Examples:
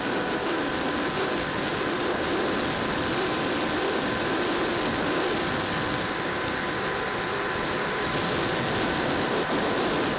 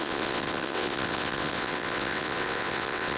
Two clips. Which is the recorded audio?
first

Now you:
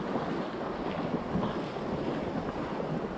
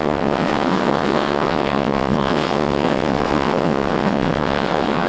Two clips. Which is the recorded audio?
first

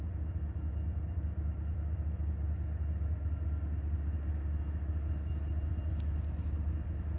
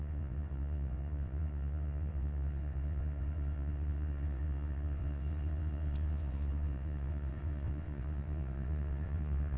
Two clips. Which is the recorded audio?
first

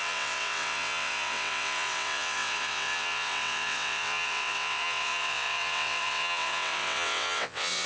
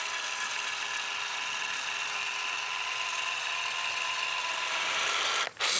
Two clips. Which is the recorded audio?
second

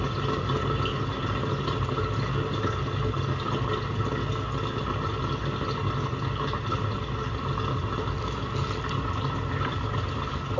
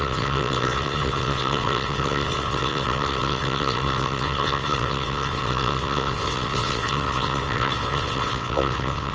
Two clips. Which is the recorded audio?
first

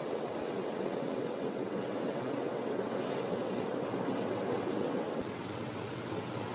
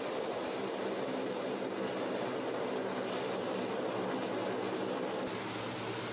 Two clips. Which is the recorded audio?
second